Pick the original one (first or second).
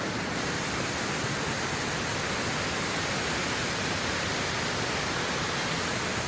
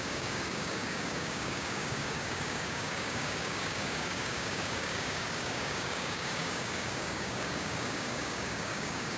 first